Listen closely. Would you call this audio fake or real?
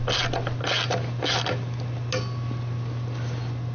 real